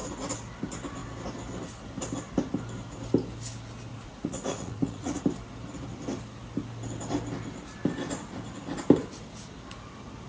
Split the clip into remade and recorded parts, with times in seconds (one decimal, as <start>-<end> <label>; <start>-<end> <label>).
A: 0.0-3.9 recorded; 3.9-5.2 remade; 5.2-10.3 recorded